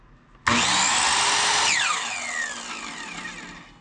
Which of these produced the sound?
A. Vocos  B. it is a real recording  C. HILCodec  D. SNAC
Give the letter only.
B